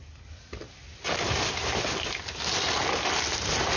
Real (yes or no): yes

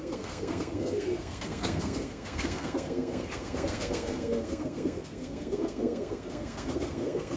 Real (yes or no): no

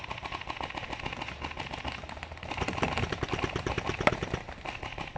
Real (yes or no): yes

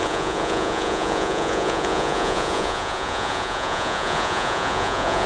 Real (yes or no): no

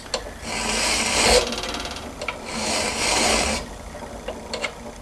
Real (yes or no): yes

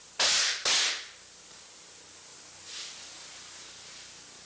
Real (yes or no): yes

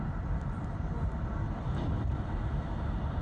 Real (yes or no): yes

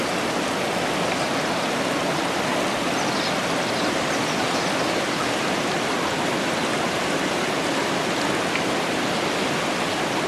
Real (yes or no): yes